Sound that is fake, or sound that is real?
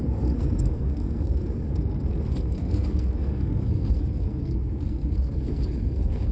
fake